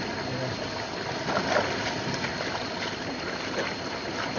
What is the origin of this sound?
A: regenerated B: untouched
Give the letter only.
B